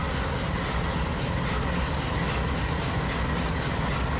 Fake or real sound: real